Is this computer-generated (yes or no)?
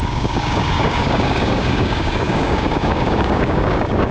yes